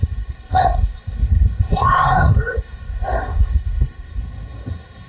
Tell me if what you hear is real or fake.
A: fake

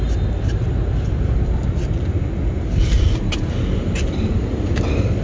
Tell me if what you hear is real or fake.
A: real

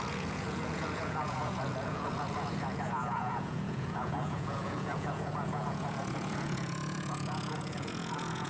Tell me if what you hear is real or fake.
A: fake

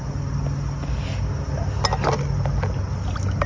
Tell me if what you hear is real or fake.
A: real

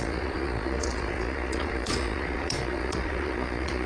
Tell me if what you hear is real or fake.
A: fake